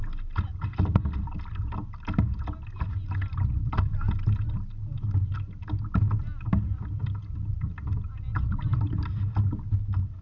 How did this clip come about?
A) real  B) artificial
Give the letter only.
A